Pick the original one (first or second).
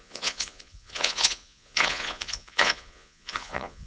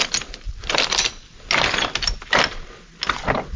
second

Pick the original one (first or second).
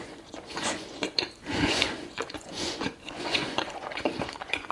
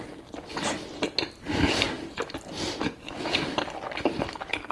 second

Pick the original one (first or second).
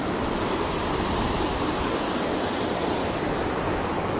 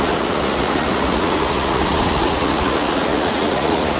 first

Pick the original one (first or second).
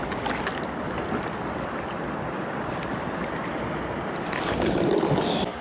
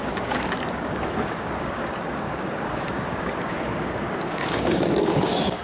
first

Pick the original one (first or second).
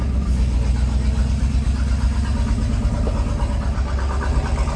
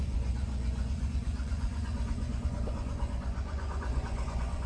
first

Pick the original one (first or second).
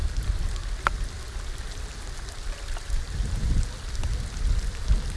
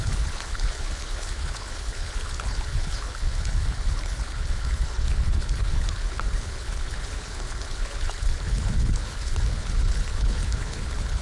first